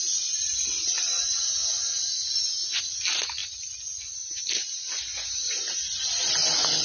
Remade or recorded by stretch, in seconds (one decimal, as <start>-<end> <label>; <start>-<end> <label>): 0.0-6.8 recorded